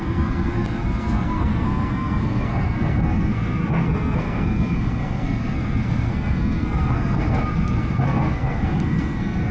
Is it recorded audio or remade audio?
remade